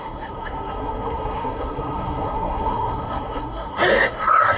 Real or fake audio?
fake